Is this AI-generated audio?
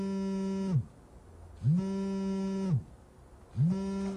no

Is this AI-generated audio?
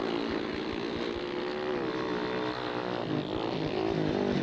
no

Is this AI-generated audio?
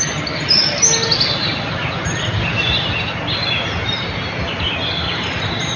no